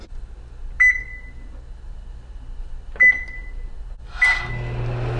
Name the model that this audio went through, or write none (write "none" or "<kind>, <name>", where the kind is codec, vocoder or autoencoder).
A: none